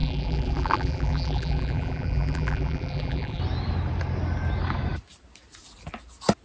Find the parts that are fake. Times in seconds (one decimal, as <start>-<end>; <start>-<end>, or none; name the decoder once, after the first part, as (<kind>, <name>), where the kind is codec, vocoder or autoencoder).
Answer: 0.0-3.4 (vocoder, BigVGAN v2)

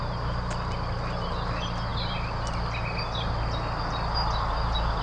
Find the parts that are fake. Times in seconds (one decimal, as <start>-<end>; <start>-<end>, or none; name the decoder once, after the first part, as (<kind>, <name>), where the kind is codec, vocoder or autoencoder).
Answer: none

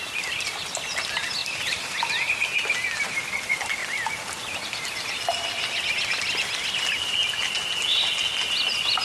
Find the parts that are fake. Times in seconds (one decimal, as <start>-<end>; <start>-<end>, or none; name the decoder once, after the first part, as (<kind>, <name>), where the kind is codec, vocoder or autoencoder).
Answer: 1.4-2.1 (vocoder, BigVGAN v2)

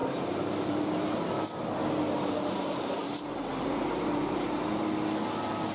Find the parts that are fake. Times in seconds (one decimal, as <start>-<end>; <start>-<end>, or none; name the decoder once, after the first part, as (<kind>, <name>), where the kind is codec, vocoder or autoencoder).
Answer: 0.0-1.3 (vocoder, BigVGAN v2)

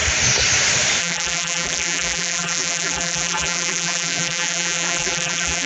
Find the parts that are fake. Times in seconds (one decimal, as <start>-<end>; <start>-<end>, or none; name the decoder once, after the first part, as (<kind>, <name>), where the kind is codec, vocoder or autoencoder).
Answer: 1.0-5.7 (vocoder, BigVGAN v2)

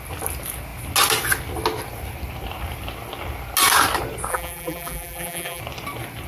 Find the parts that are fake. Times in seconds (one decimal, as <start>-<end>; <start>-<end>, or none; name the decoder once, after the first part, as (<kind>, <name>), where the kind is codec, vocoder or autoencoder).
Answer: 4.3-5.6 (vocoder, BigVGAN v2)

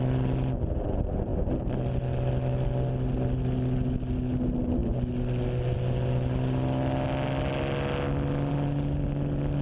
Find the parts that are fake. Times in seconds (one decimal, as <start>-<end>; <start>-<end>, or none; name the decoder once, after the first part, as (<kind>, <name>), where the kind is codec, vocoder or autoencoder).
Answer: none